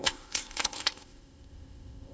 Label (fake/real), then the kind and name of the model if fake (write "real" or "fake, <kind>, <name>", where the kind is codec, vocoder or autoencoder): fake, codec, ZipCodec